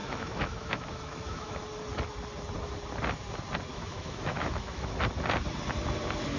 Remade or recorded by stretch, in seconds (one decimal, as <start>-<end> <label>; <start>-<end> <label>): 0.0-1.6 remade; 1.6-3.7 recorded; 3.7-5.0 remade; 5.0-6.4 recorded